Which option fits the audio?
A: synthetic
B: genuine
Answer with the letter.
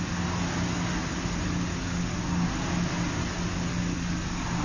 B